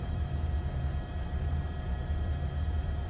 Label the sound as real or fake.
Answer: fake